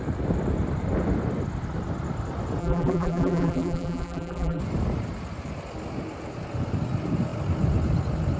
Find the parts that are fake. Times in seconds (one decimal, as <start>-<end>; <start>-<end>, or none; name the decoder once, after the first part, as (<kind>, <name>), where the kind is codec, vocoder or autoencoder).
2.6-4.6 (vocoder, BigVGAN v2)